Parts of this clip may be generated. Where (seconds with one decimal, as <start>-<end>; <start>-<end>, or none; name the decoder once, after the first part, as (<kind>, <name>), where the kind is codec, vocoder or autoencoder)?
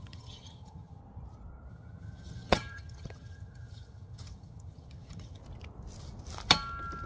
0.0-1.0 (vocoder, HiFi-GAN); 1.7-5.4